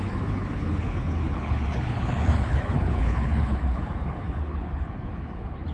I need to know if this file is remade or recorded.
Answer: remade